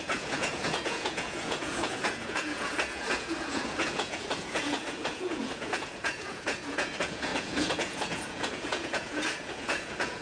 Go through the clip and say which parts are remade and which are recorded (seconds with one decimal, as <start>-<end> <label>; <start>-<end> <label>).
0.0-10.2 remade